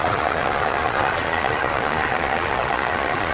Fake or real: fake